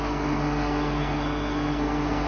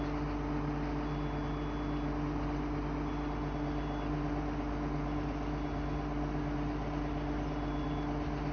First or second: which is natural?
second